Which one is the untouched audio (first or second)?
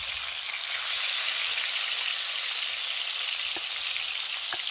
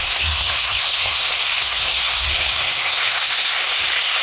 first